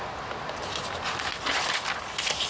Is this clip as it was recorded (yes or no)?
yes